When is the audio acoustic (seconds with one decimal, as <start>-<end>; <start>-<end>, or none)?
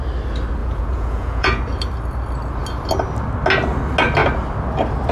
0.0-0.6; 1.6-5.1